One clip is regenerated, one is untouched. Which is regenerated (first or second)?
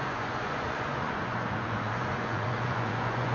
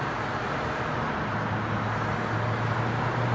first